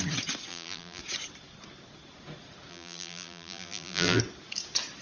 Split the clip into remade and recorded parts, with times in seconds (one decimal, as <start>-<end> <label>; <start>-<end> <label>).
0.0-0.5 recorded; 0.5-1.0 remade; 1.0-2.7 recorded; 2.7-4.2 remade; 4.2-5.0 recorded